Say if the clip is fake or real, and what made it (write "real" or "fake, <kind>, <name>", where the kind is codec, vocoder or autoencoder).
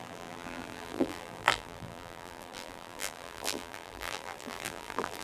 fake, vocoder, BigVGAN v2